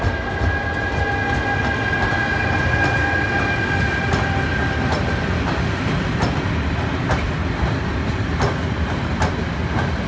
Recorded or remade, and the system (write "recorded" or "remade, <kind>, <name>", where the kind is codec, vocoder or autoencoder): recorded